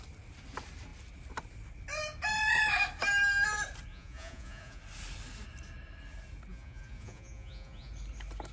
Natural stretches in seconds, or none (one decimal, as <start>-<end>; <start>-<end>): 0.0-3.9; 4.8-6.5; 7.9-8.5